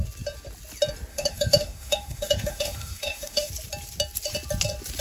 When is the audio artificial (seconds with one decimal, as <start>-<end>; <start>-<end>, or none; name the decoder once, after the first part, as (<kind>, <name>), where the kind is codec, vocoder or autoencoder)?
1.1-3.5 (autoencoder, DAC-VAE)